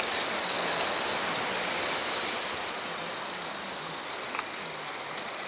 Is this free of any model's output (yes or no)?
yes